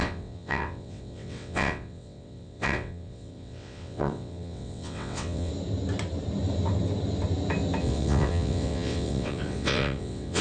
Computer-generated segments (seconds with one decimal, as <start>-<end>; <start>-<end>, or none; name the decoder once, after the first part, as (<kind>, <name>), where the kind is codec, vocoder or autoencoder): 0.0-5.5 (vocoder, WaveNeXt); 7.8-10.4